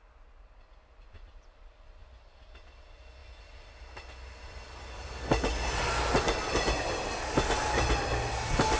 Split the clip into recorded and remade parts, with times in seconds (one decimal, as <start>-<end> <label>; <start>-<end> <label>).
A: 0.0-8.8 recorded